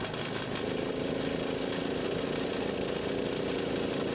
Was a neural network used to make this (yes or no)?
no